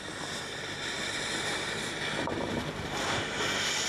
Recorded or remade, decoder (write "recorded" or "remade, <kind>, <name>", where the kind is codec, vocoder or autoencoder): remade, vocoder, BigVGAN v2